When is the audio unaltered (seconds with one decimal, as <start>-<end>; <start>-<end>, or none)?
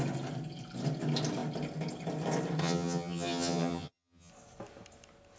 0.0-2.6; 4.3-5.4